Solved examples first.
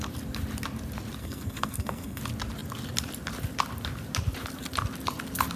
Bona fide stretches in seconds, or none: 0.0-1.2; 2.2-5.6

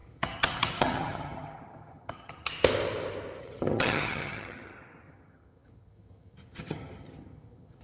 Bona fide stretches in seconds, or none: 2.5-3.4

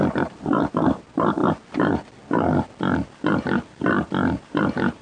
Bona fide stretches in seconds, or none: 1.4-4.4

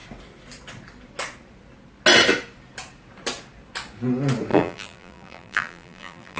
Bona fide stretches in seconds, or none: 0.0-4.5

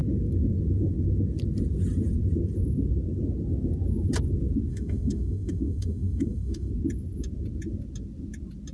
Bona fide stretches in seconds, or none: 0.0-4.7; 6.7-8.7

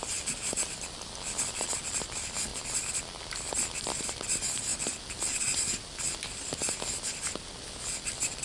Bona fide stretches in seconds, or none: 0.0-8.4

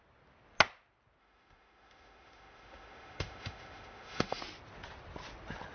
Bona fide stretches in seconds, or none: 0.0-1.2; 4.4-5.7